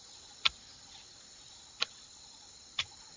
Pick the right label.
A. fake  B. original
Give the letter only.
B